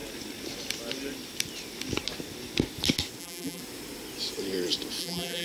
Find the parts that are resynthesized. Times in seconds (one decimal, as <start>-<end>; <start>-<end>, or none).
3.2-3.6; 5.0-5.4